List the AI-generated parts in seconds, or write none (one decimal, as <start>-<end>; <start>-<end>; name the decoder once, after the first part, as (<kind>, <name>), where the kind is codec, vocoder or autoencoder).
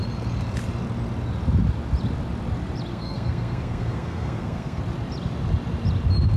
2.9-4.8 (codec, SNAC)